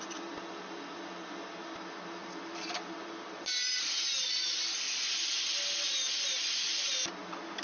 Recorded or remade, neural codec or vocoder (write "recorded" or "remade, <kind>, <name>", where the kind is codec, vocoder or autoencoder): recorded